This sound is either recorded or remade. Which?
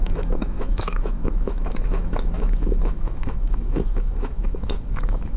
remade